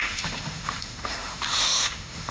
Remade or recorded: remade